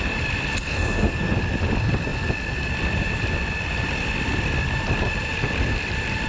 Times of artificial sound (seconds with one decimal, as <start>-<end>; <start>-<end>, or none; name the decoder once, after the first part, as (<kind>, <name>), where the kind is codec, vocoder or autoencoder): 0.7-1.3 (codec, SNAC)